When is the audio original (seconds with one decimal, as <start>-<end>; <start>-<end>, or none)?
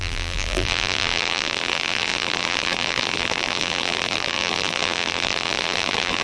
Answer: none